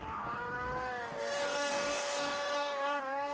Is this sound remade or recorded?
remade